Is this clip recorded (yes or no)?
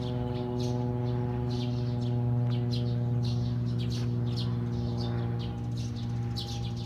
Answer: yes